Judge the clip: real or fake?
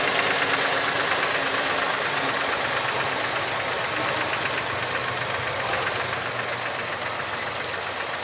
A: real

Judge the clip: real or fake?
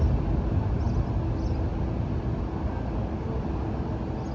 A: real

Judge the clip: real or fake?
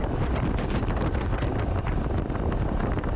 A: real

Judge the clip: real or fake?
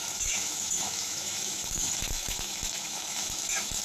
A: fake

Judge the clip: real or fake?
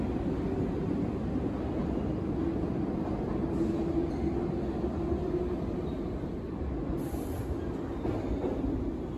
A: real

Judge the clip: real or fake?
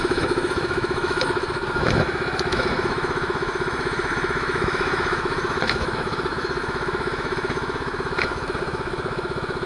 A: fake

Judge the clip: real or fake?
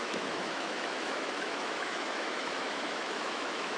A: fake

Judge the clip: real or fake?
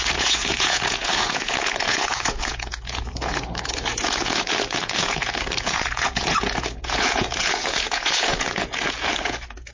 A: fake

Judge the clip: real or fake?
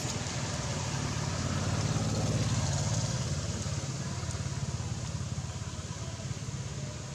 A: real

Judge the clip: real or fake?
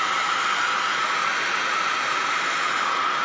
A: real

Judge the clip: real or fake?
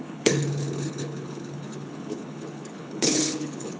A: fake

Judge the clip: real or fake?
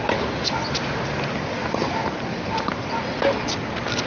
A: real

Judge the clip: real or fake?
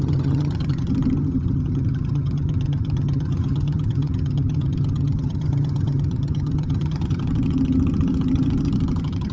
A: fake